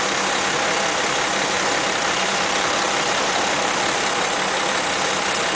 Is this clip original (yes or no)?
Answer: yes